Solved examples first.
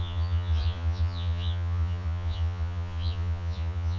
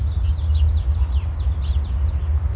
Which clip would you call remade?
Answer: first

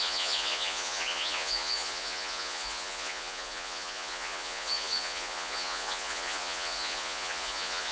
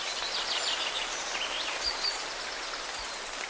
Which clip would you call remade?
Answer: first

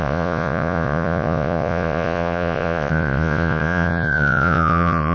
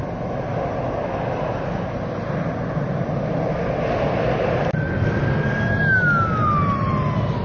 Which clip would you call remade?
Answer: first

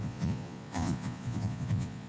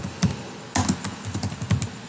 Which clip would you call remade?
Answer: first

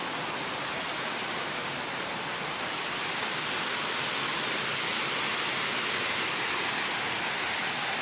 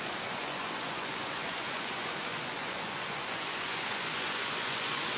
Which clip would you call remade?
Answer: second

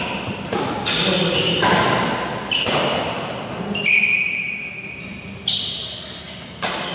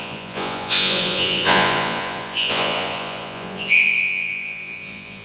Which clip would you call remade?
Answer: second